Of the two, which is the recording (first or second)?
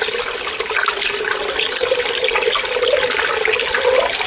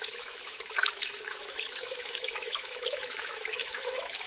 first